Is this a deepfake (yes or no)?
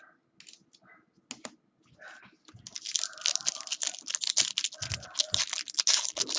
no